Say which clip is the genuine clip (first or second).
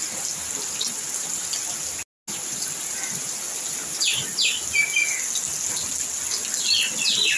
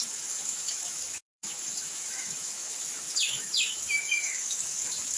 first